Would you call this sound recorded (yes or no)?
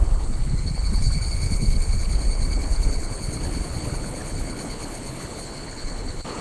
no